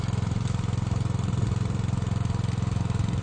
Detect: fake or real real